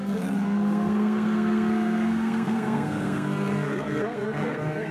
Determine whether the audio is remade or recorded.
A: remade